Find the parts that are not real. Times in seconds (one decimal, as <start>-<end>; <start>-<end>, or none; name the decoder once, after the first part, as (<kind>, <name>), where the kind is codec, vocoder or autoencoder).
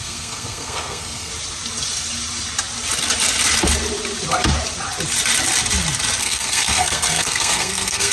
0.0-1.3 (codec, SNAC); 6.2-8.1